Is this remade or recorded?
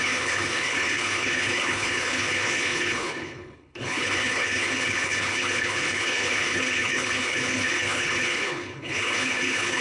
remade